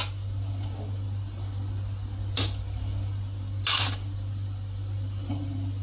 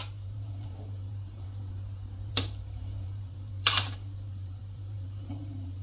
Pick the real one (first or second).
first